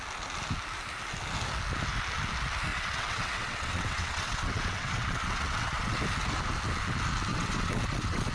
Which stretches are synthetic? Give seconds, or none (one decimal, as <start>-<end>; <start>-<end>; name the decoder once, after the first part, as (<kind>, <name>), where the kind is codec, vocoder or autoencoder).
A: 2.7-6.0 (vocoder, WaveNeXt); 7.3-8.3